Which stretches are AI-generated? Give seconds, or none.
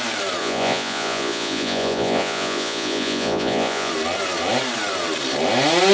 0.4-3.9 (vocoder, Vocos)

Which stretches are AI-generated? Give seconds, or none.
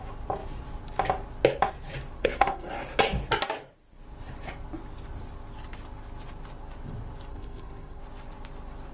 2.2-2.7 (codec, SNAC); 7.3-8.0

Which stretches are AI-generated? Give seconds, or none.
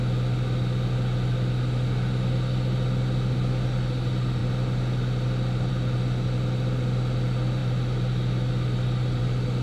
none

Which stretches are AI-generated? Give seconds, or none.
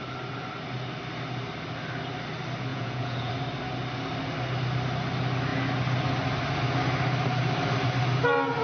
2.7-3.3 (vocoder, Vocos)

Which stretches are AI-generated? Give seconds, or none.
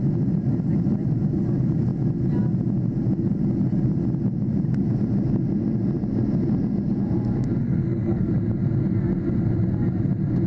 7.6-8.3 (codec, SNAC)